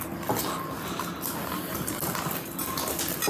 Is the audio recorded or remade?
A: recorded